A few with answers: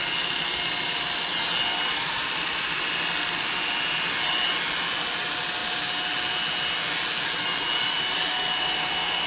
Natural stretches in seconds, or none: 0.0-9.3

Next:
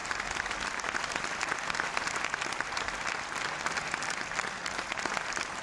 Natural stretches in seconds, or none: 0.0-5.6

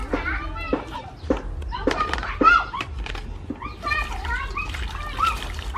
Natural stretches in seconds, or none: 0.0-5.8